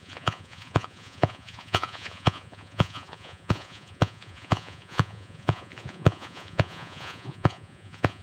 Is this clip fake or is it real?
fake